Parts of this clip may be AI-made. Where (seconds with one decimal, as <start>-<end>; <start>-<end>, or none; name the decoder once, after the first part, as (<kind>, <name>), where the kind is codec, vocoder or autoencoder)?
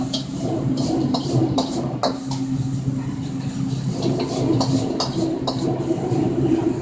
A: 0.0-2.0 (vocoder, BigVGAN v2); 5.3-6.8